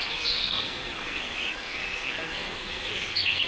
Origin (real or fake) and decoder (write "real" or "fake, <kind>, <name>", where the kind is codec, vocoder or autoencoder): fake, codec, SNAC